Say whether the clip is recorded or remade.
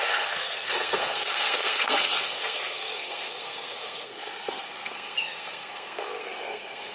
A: remade